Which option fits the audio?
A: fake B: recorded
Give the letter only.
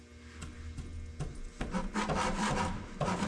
B